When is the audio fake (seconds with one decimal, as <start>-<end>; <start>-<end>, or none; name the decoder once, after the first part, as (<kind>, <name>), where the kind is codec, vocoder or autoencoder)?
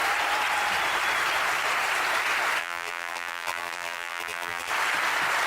2.6-4.7 (vocoder, BigVGAN v2)